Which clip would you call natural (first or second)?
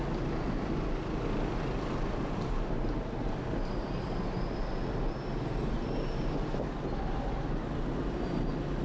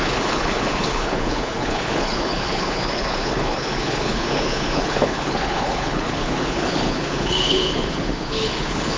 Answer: first